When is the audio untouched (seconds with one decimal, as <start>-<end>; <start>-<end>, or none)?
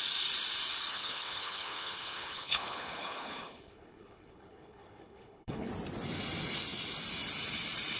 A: 0.0-0.9; 5.7-8.0